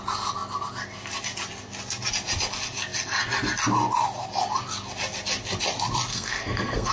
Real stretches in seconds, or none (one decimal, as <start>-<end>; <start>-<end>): 0.0-6.1